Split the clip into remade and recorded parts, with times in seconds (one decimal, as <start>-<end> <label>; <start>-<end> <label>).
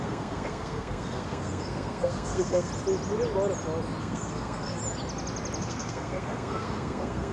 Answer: 0.0-2.7 remade; 2.7-4.0 recorded; 4.0-4.8 remade; 4.8-5.6 recorded; 5.6-7.3 remade